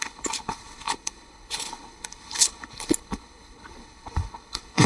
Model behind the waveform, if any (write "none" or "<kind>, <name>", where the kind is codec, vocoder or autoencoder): codec, HILCodec